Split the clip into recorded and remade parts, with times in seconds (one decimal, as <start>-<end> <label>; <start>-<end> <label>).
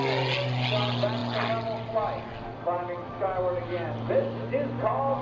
0.0-5.2 recorded